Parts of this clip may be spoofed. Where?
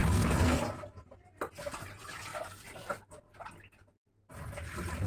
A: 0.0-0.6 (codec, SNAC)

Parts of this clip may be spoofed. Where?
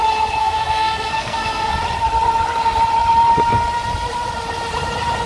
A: 0.4-1.7 (codec, SNAC)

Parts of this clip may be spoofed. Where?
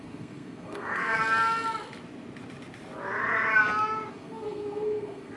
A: 0.0-1.2 (codec, SNAC); 4.1-5.4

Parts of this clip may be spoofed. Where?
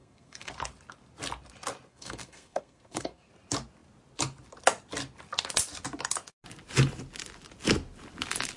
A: 0.0-0.5 (codec, SNAC); 1.9-3.3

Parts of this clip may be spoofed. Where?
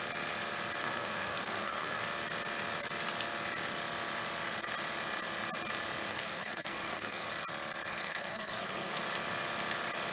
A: 0.8-2.0 (codec, SNAC); 6.1-7.3; 7.9-9.0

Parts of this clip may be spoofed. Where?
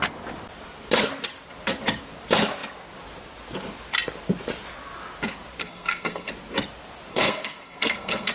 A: 5.6-6.3 (codec, SNAC); 7.1-8.3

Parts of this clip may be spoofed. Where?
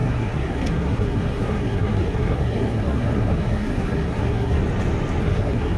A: 0.0-4.6 (codec, SNAC); 5.2-5.8